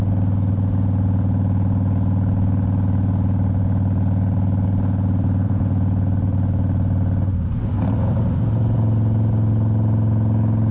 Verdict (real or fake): real